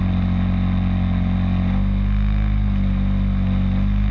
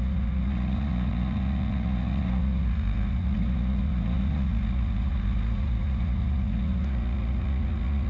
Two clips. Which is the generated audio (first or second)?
second